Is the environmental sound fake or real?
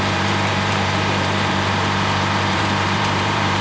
fake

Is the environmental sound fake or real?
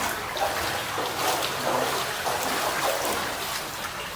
real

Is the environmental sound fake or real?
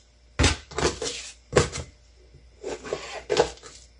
real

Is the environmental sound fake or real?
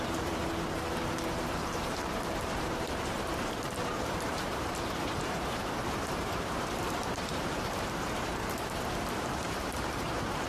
fake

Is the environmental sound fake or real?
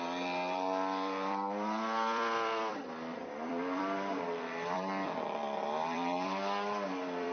fake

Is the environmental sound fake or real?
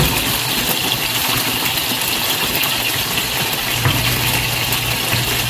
real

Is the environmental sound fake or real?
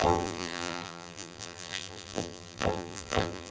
fake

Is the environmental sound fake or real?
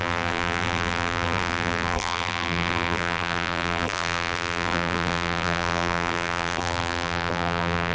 fake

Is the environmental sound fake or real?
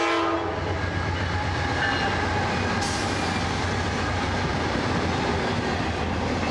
real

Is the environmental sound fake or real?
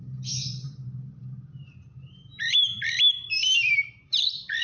fake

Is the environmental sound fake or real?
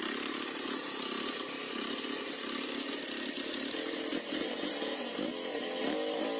real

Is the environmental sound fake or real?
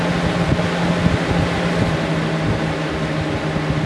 real